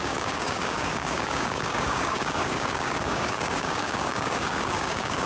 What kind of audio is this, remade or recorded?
remade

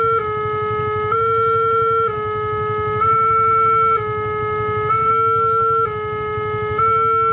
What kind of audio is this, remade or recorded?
recorded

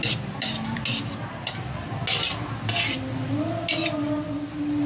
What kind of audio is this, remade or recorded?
recorded